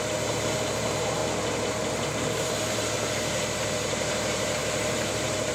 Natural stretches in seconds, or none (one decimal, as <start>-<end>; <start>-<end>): 1.2-2.1